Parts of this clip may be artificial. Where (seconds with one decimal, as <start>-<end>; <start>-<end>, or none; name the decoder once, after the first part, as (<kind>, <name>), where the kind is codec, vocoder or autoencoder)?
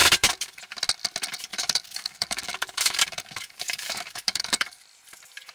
0.0-0.6 (codec, DAC); 1.5-4.8